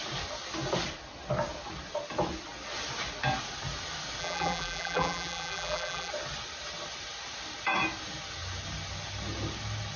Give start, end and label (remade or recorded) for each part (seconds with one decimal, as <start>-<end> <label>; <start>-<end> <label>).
0.0-4.2 recorded; 4.2-6.1 remade; 6.1-10.0 recorded